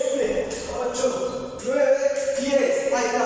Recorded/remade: recorded